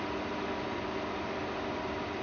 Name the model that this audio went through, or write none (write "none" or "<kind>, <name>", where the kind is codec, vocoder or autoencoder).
none